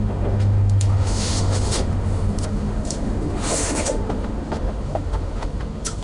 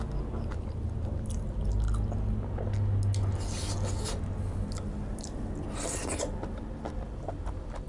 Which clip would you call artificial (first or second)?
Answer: first